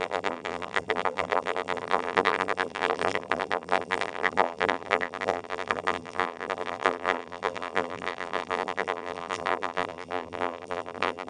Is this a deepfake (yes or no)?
yes